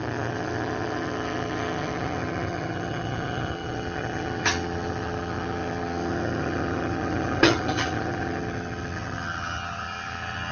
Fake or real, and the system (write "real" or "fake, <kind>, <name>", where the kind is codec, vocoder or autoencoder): fake, vocoder, HiFi-GAN